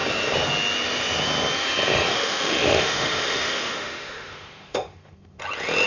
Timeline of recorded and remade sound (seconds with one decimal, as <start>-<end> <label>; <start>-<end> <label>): 0.0-2.1 recorded; 2.1-5.4 remade; 5.4-5.9 recorded